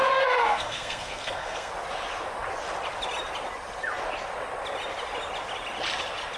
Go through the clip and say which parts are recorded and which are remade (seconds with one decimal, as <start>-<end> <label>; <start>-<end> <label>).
0.0-1.7 remade; 1.7-6.4 recorded